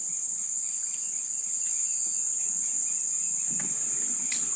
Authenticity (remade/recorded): recorded